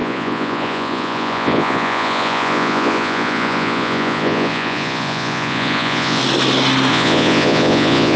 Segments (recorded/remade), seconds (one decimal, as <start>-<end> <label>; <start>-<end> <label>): 0.0-6.2 remade; 6.2-6.9 recorded; 6.9-8.2 remade

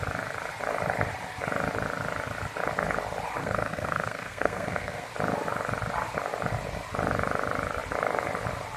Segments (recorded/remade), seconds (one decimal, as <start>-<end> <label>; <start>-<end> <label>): 0.0-3.4 recorded; 3.4-5.1 remade; 5.1-8.8 recorded

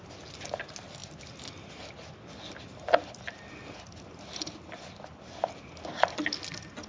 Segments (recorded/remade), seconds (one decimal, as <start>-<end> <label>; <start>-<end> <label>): 0.0-6.9 recorded

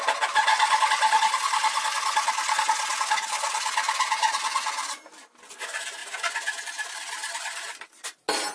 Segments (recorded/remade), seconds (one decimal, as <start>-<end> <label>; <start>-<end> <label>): 0.0-8.5 recorded

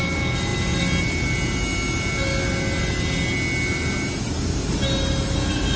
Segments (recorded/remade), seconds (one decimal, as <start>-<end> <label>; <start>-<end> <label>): 0.0-5.8 recorded

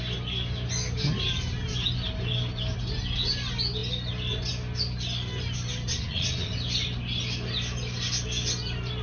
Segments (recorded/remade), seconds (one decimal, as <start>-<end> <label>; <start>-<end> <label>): 0.0-5.9 recorded; 5.9-6.5 remade; 6.5-9.0 recorded